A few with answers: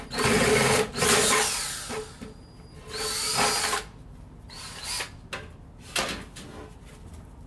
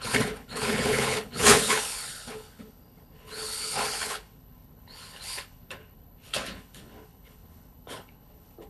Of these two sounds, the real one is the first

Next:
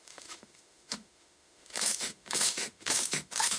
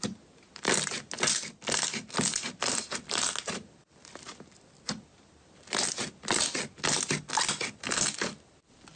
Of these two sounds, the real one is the second